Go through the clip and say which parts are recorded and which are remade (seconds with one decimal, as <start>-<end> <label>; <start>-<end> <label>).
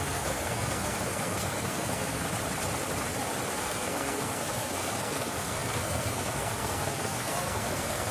0.0-2.2 remade; 2.2-3.5 recorded; 3.5-8.1 remade